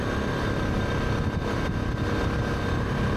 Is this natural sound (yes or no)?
yes